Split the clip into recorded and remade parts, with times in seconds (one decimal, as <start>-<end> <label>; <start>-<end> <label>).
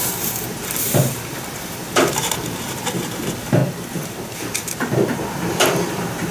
0.0-6.3 remade